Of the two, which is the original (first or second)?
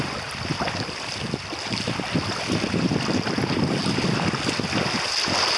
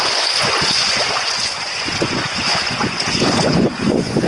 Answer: first